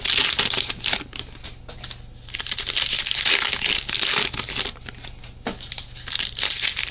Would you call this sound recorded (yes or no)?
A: yes